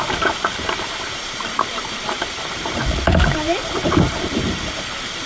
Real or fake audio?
fake